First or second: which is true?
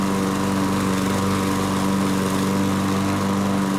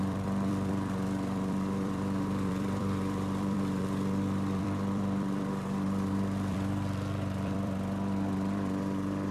first